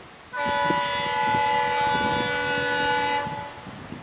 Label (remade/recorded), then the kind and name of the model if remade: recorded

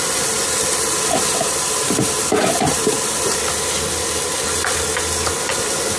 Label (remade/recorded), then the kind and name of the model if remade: recorded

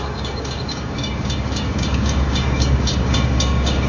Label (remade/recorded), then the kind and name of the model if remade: remade, codec, DAC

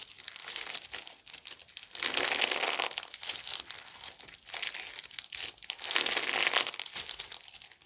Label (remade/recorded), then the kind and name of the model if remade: recorded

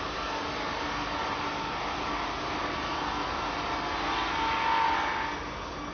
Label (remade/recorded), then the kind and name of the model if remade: recorded